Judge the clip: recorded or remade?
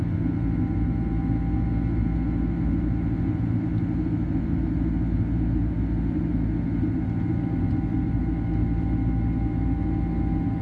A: recorded